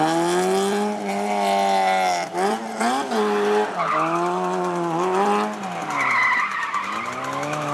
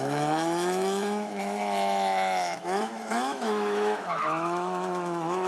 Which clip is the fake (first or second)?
second